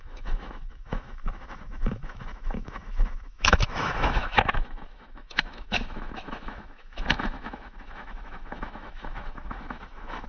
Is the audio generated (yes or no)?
yes